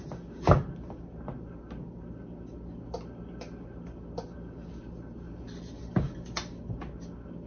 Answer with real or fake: real